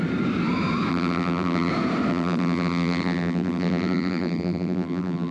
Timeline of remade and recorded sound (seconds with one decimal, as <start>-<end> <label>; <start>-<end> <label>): 0.0-0.9 recorded; 0.9-1.7 remade; 1.7-2.1 recorded; 2.1-5.3 remade